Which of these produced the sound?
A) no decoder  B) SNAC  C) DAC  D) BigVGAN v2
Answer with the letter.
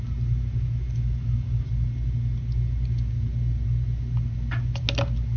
A